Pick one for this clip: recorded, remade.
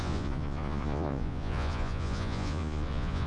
remade